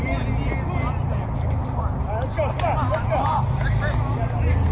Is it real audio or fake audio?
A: real